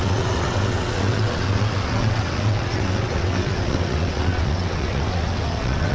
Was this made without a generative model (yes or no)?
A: no